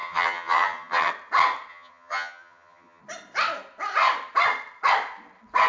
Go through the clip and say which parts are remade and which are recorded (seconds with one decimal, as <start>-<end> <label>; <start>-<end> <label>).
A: 0.0-1.1 remade; 1.1-1.7 recorded; 1.7-3.0 remade; 3.0-5.7 recorded